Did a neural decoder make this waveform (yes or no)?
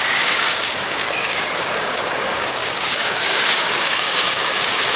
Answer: yes